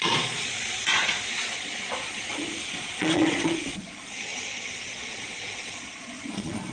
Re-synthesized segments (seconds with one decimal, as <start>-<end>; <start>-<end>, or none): 0.0-6.7